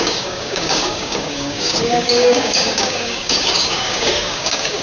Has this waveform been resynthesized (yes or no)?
yes